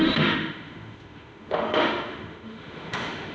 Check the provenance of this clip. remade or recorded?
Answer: remade